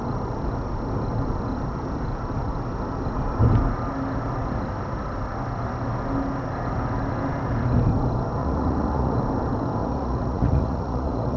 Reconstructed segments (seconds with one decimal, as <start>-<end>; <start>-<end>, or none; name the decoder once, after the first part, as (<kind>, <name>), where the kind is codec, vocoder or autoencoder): 8.4-9.2 (vocoder, Vocos); 9.8-11.4